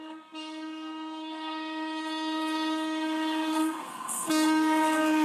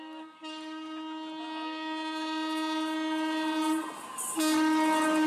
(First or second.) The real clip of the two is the second